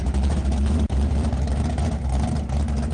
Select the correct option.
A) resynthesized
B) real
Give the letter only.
A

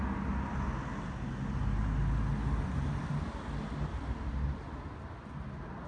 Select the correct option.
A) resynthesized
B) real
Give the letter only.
B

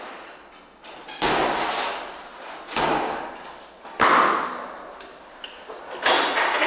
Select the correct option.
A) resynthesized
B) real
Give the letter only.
B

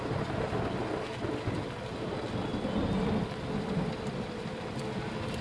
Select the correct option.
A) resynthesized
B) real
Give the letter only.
B